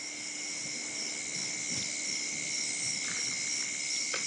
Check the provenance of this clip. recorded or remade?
recorded